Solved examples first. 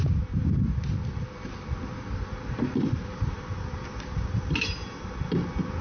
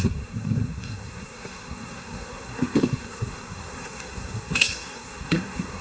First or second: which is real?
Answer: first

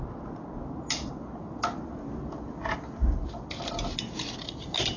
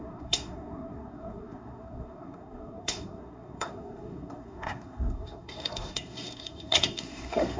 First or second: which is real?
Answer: first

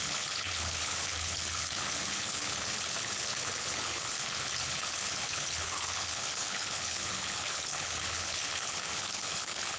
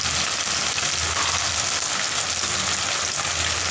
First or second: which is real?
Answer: second